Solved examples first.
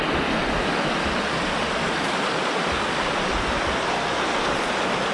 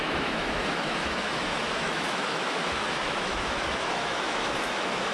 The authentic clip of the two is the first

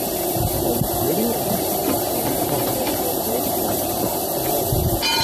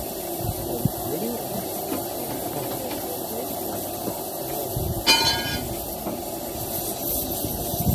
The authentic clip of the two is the second